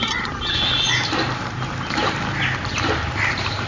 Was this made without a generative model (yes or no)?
yes